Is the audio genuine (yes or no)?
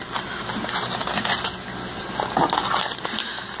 yes